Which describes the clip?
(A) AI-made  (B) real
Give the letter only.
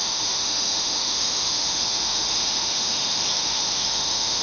A